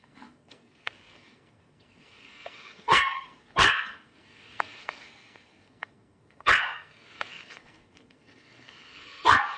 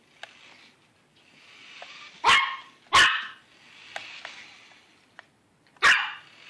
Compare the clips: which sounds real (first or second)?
second